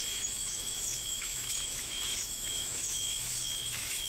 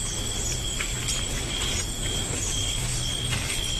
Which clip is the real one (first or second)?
second